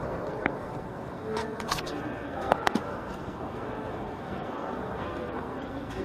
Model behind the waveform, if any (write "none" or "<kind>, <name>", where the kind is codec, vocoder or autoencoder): codec, SNAC